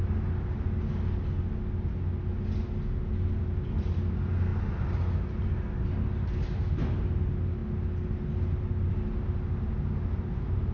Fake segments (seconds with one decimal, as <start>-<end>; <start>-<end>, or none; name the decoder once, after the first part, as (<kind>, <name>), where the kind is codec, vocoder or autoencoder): none